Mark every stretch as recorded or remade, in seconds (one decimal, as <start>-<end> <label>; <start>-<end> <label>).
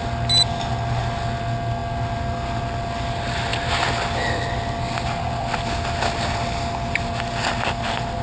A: 0.0-8.2 recorded